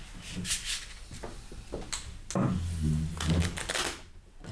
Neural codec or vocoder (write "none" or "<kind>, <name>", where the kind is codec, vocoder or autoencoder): none